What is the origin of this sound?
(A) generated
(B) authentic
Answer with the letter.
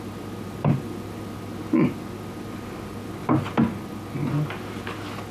B